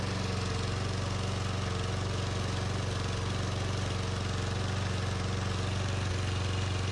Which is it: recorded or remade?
recorded